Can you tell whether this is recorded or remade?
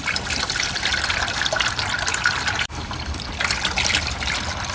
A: remade